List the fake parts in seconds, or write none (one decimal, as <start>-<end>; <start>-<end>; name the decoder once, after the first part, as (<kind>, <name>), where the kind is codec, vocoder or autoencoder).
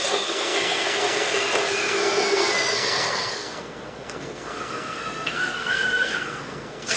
0.0-7.0 (codec, SNAC)